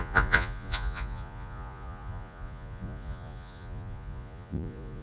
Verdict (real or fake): fake